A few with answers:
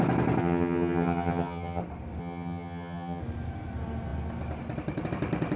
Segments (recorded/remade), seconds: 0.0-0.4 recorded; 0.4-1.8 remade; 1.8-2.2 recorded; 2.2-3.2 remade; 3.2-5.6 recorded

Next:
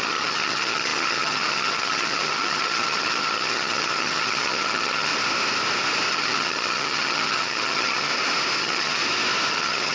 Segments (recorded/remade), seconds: 0.0-5.1 remade; 5.1-6.1 recorded; 6.1-8.1 remade; 8.1-8.6 recorded; 8.6-9.0 remade; 9.0-9.5 recorded; 9.5-9.9 remade